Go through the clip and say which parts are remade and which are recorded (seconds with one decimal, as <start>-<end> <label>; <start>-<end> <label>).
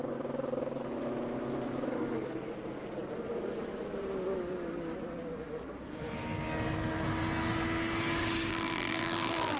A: 0.0-8.5 recorded; 8.5-9.6 remade